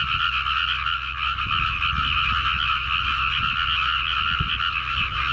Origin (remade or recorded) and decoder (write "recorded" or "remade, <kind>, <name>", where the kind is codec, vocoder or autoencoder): recorded